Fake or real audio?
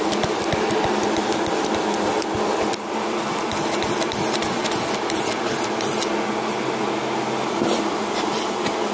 real